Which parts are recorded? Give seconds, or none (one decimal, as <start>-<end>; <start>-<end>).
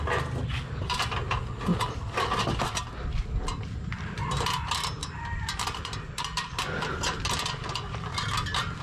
0.0-1.7; 2.4-5.0; 8.1-8.8